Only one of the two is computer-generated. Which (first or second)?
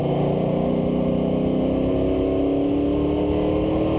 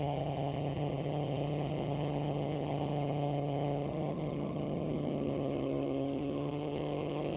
second